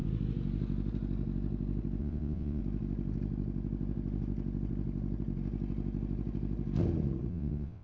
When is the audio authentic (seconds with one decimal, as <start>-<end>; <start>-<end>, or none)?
0.0-2.0; 2.6-7.3